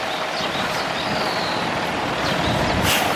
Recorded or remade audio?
recorded